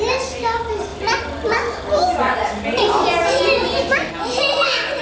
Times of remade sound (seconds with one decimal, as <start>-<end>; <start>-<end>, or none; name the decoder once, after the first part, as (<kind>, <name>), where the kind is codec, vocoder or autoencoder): none